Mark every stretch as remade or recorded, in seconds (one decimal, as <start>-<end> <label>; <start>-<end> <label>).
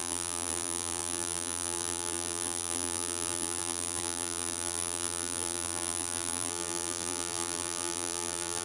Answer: 0.0-8.6 remade